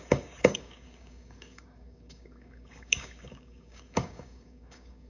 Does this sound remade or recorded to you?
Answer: remade